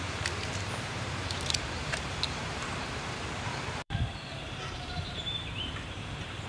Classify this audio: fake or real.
fake